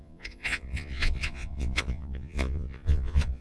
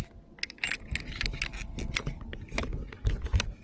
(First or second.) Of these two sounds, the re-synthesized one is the first